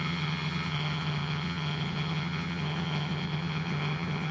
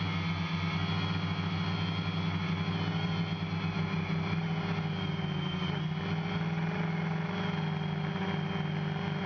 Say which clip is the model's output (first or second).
first